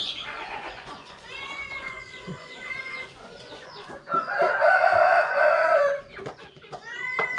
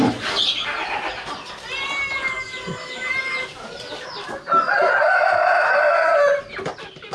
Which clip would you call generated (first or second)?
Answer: first